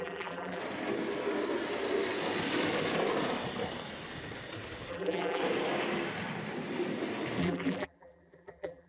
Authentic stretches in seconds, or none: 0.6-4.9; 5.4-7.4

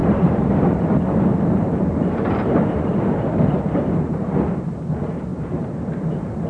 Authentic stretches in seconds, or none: 0.9-1.3; 4.5-5.3; 5.9-6.5